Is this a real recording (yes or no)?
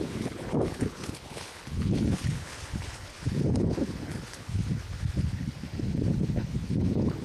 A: no